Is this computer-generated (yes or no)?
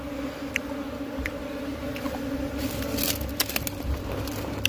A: no